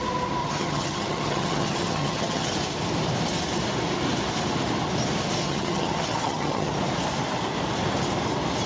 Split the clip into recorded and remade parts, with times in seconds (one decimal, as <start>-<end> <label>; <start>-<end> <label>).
0.0-0.4 recorded; 0.4-2.5 remade; 2.5-5.4 recorded; 5.4-6.7 remade; 6.7-8.7 recorded